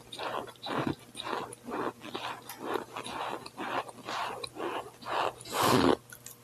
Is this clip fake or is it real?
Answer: real